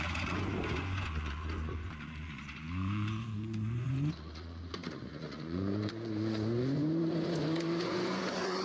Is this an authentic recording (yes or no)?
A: no